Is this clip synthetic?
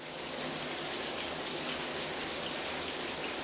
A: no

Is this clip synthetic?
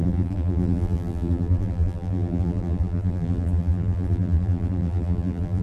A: yes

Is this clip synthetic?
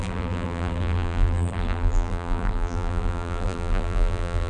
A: yes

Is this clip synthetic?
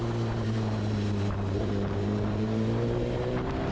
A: yes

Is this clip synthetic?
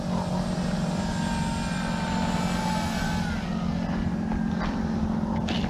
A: no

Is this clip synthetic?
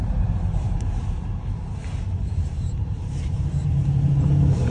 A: yes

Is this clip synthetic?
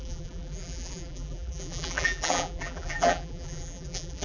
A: yes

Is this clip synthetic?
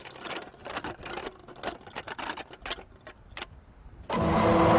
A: no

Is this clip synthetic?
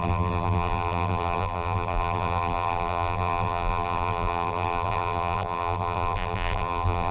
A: yes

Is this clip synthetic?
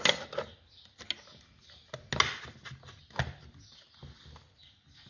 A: no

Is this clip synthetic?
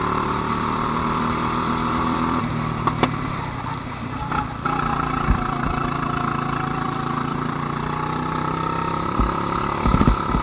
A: yes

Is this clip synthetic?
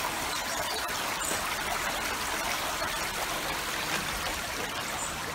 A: yes